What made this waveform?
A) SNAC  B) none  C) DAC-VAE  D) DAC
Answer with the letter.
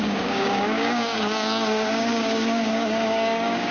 D